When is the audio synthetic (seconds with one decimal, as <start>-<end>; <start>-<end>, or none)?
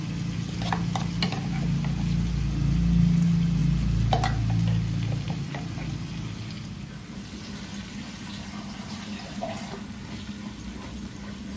none